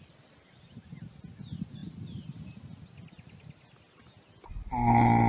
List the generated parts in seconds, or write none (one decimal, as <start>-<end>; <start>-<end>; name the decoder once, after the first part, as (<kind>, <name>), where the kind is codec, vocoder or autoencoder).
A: none